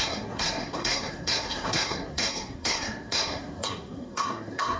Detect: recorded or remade remade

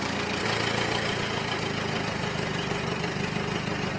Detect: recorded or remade recorded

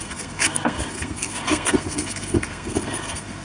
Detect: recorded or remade remade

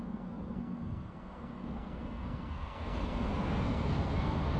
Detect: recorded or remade remade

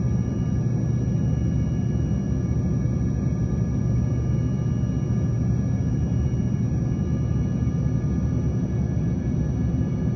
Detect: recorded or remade recorded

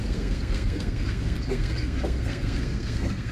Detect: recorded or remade remade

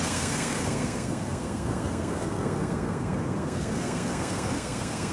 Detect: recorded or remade remade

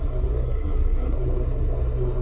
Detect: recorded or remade remade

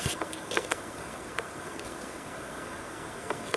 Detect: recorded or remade remade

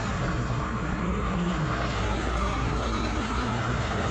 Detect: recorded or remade remade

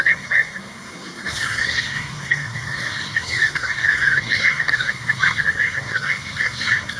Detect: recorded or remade remade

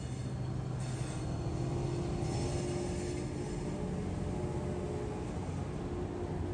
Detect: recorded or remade recorded